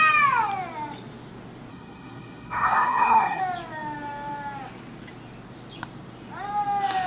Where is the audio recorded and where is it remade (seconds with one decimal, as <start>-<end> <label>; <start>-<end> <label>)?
0.0-1.7 recorded; 1.7-3.4 remade; 3.4-7.1 recorded